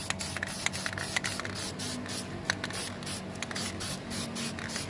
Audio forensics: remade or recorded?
recorded